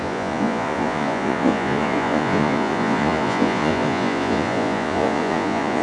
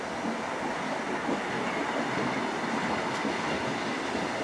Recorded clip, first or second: second